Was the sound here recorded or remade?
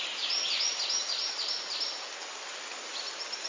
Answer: recorded